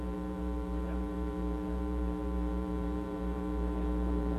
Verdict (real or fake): fake